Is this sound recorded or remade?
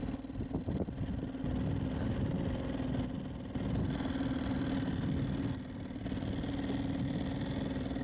recorded